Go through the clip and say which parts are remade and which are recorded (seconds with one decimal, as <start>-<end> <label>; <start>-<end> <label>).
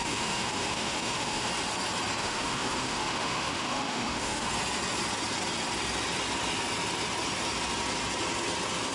0.0-1.5 remade; 1.5-2.2 recorded; 2.2-4.5 remade; 4.5-8.9 recorded